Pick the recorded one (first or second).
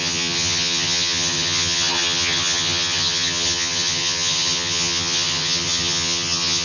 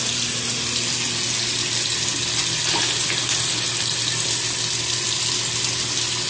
second